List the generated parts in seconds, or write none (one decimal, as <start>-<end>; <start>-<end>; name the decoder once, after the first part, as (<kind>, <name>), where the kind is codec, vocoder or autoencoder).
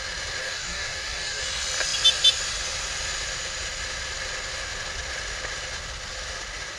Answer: 0.4-1.4 (codec, DAC)